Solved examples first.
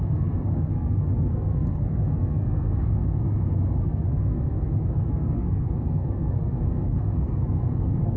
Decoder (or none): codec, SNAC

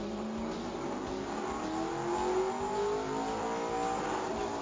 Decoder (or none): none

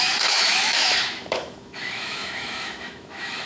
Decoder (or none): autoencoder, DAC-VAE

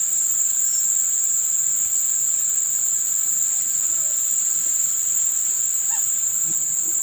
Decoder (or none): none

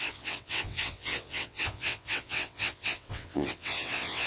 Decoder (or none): vocoder, WaveNeXt